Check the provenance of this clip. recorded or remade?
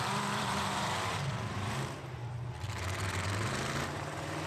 remade